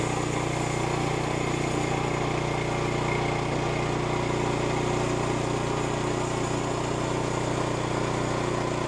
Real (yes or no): yes